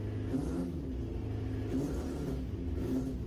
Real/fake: real